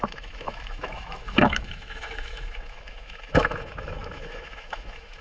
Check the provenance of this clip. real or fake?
fake